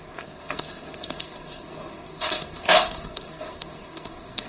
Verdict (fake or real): fake